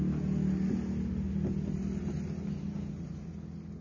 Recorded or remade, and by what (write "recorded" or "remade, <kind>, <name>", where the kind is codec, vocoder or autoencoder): recorded